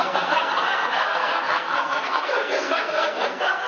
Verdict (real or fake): fake